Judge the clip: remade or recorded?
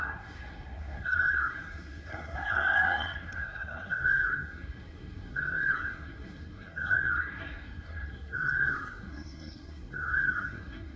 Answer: remade